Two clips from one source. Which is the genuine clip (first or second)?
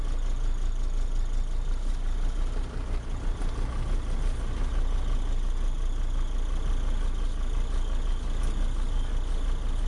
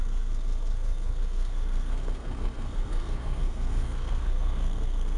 first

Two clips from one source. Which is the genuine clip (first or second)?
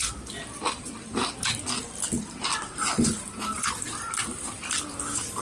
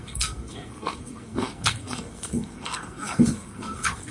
first